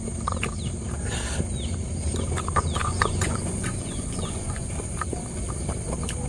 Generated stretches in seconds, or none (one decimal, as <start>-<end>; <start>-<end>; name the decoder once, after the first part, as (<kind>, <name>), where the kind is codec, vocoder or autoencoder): 2.8-4.9 (vocoder, Vocos)